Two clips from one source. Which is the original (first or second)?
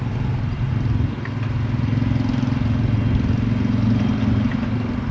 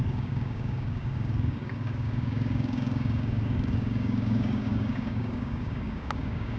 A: first